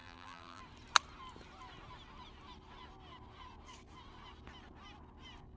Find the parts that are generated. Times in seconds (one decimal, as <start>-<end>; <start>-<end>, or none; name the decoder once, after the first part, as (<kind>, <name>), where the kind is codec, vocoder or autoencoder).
0.0-0.6 (vocoder, BigVGAN v2)